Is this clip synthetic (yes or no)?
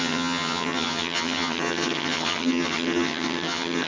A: yes